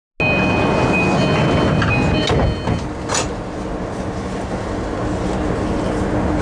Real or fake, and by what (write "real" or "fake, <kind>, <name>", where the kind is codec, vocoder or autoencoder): real